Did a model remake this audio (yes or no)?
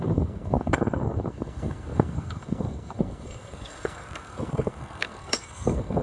yes